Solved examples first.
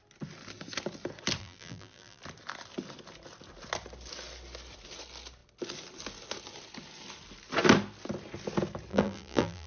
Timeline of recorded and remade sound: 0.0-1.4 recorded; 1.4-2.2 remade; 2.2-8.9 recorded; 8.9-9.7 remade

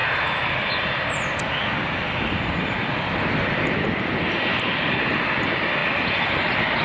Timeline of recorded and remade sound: 0.0-5.8 recorded; 5.8-6.8 remade

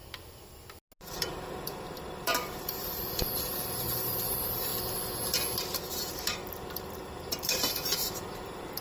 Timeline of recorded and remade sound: 0.0-1.1 recorded; 1.1-4.7 remade; 4.7-5.9 recorded; 5.9-8.8 remade